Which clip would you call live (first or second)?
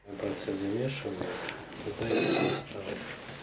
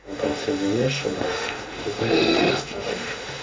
first